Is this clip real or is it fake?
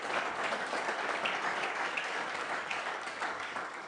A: fake